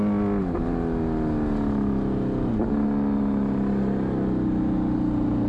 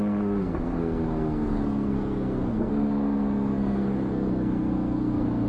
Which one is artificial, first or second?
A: second